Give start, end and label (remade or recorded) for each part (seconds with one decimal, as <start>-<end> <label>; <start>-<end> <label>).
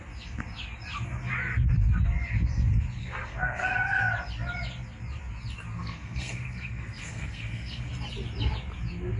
0.0-3.0 recorded; 3.0-4.0 remade; 4.0-5.8 recorded; 5.8-7.9 remade; 7.9-9.2 recorded